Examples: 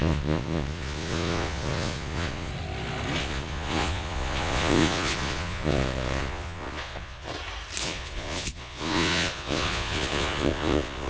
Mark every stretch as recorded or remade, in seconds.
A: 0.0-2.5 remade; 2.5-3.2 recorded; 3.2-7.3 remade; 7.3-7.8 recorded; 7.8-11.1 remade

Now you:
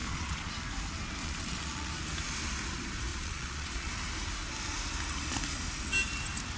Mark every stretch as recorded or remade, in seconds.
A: 0.0-0.5 remade; 0.5-1.2 recorded; 1.2-1.9 remade; 1.9-3.1 recorded; 3.1-3.9 remade; 3.9-6.6 recorded

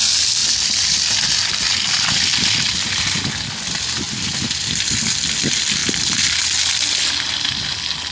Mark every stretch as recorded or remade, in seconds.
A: 0.0-8.1 recorded